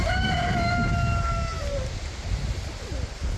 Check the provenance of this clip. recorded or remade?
recorded